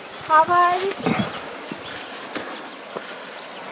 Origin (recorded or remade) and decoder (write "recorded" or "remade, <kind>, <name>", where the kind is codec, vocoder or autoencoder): recorded